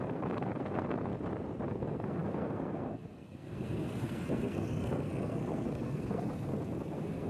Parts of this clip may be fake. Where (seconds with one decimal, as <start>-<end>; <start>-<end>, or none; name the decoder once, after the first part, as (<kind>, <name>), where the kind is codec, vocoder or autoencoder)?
0.0-1.1 (codec, SNAC); 1.7-7.3